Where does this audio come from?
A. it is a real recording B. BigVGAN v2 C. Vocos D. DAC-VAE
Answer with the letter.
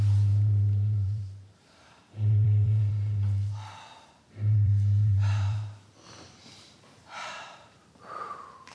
B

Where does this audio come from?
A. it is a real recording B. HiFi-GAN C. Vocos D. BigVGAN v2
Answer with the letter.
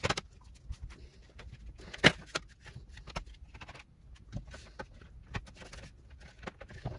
A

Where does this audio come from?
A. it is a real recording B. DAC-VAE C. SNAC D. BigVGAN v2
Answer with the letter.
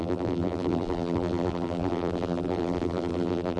D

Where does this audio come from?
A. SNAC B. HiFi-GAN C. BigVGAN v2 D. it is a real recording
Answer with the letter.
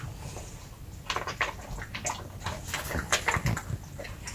D